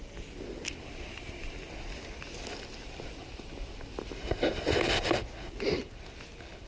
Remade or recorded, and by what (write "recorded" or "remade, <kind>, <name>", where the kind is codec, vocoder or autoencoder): recorded